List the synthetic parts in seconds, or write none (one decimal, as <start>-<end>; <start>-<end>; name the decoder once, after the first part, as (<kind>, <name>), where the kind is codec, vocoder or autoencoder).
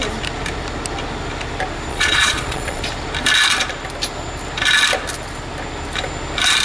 1.9-2.8 (vocoder, Vocos)